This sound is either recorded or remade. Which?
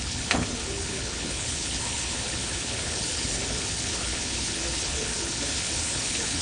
remade